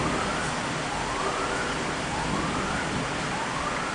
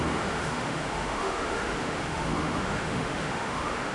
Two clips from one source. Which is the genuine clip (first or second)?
first